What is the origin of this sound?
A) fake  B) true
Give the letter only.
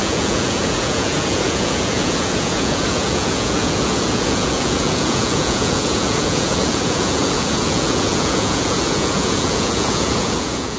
A